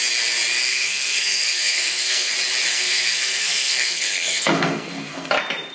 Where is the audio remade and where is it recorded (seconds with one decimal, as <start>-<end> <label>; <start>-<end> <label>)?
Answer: 0.0-0.7 recorded; 0.7-2.3 remade; 2.3-2.7 recorded; 2.7-5.3 remade; 5.3-5.7 recorded